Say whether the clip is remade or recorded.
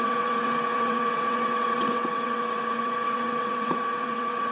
remade